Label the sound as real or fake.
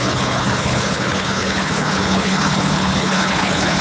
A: fake